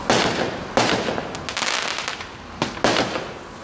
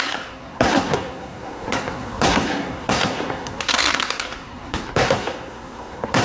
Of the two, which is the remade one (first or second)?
second